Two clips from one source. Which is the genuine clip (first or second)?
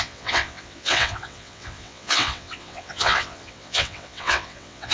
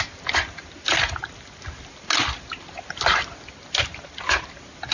second